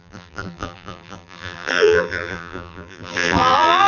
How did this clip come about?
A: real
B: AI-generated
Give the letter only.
B